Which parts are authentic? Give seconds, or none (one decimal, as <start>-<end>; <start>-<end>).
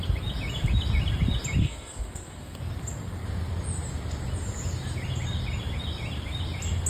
0.0-1.6; 2.6-6.9